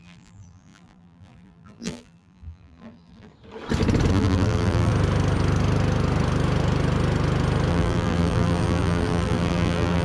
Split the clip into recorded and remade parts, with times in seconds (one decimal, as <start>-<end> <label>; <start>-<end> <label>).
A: 0.0-3.3 remade; 3.3-4.1 recorded; 4.1-4.9 remade; 4.9-7.7 recorded; 7.7-10.0 remade